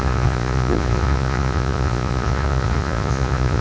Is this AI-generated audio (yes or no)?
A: yes